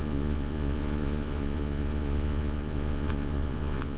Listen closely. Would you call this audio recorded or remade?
remade